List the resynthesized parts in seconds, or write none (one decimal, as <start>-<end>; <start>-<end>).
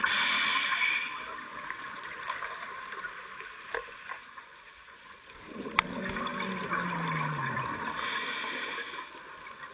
1.5-2.2; 3.8-5.3